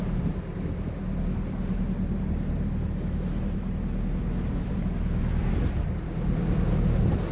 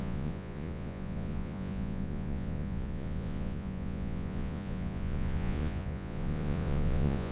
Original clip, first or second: first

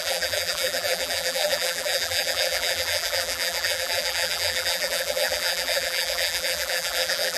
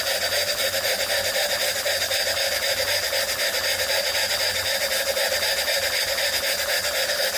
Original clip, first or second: second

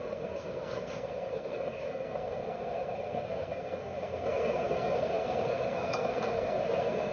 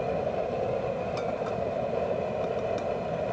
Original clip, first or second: second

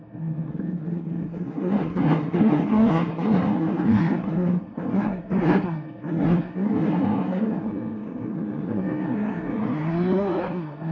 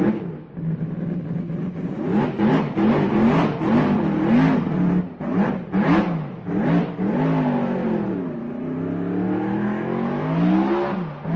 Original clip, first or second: second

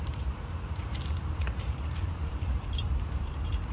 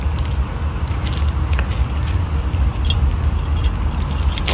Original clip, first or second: second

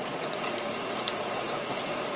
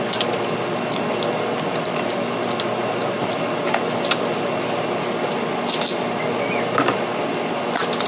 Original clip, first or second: second